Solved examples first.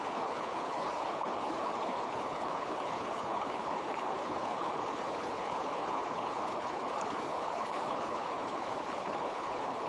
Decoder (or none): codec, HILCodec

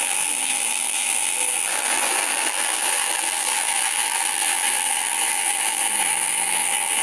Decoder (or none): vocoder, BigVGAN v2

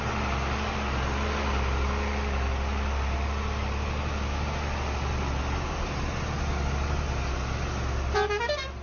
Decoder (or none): none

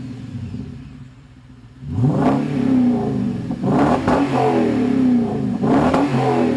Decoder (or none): vocoder, BigVGAN v2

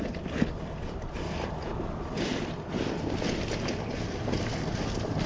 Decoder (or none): none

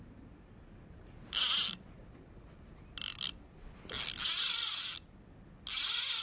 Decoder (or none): none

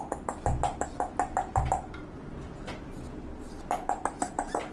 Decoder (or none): none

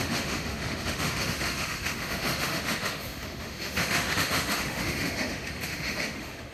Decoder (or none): autoencoder, DAC-VAE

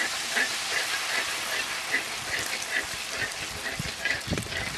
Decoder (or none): none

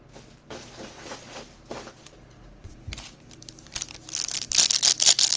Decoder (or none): none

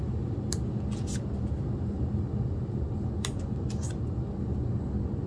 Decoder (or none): none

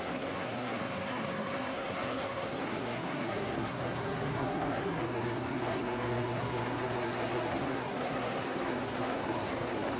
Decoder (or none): codec, SNAC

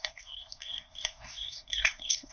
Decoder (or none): codec, SNAC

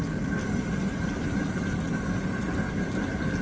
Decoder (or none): none